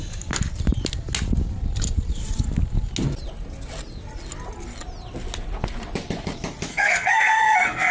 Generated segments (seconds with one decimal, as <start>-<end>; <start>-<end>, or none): 6.7-7.9